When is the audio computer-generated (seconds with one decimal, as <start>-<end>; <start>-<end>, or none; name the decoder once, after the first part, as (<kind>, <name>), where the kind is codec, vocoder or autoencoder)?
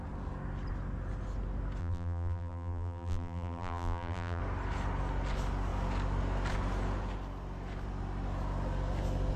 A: 1.8-4.4 (vocoder, BigVGAN v2)